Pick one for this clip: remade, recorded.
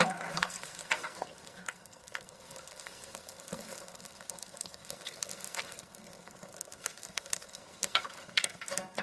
remade